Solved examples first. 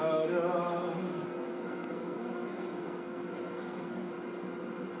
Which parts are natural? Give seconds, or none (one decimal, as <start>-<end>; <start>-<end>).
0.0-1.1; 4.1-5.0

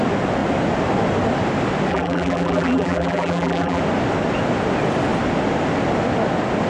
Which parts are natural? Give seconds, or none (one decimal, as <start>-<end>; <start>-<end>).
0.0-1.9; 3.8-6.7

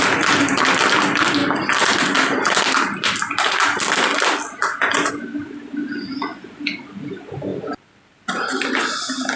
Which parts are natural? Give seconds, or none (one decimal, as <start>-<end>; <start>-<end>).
0.0-6.3; 7.1-7.5; 8.7-9.4

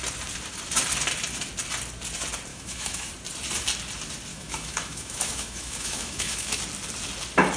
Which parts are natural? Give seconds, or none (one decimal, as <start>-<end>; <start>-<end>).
0.0-2.5; 3.1-4.3; 6.6-7.6

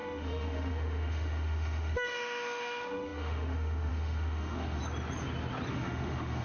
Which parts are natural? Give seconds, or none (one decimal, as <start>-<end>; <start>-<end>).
4.8-5.7